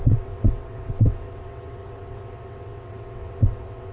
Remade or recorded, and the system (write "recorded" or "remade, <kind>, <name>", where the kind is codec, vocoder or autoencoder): remade, vocoder, WaveNeXt